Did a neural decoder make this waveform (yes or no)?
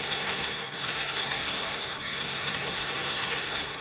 yes